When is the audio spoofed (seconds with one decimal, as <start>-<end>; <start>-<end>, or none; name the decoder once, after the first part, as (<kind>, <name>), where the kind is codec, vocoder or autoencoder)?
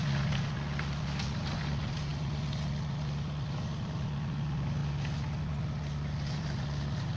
0.0-2.1 (vocoder, BigVGAN v2); 2.9-4.8; 5.4-7.2